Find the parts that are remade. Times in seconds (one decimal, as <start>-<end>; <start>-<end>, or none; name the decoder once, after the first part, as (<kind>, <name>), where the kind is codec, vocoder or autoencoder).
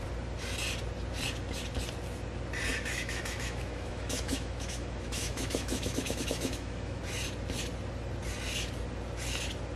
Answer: 2.7-7.0 (autoencoder, DAC-VAE)